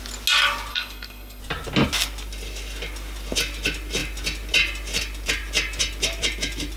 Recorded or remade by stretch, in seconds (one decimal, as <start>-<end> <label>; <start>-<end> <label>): 0.0-0.7 recorded; 0.7-1.4 remade; 1.4-6.8 recorded